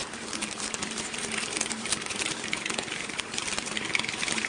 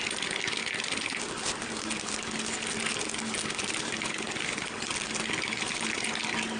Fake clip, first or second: first